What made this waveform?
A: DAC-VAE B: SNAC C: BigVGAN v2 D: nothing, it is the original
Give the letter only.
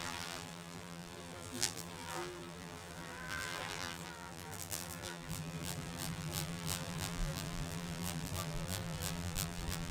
C